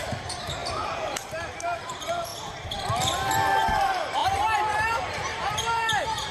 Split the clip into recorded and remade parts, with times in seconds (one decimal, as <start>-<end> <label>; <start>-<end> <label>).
0.0-2.3 remade; 2.3-3.6 recorded; 3.6-6.3 remade